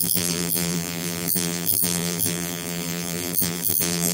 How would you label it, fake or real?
fake